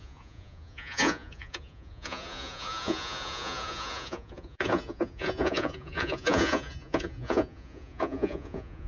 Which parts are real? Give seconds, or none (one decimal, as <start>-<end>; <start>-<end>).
none